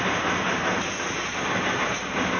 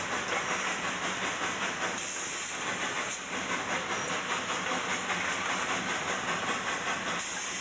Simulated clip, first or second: first